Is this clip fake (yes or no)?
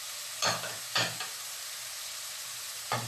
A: yes